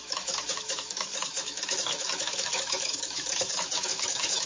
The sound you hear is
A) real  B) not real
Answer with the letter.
B